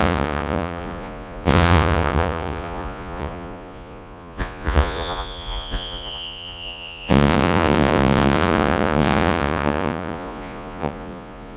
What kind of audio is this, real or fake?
fake